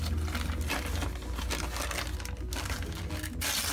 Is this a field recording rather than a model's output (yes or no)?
yes